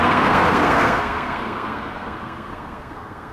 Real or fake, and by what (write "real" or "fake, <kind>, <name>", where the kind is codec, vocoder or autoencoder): fake, codec, SNAC